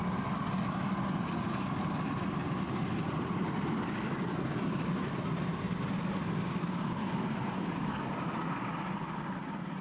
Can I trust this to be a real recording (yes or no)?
yes